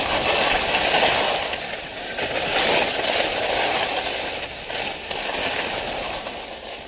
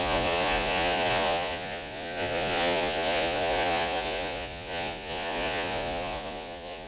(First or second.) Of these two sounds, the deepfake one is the second